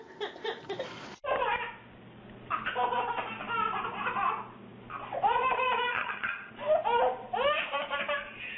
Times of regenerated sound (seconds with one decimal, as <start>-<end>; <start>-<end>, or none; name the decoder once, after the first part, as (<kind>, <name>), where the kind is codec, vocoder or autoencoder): 5.9-6.5 (vocoder, HiFi-GAN)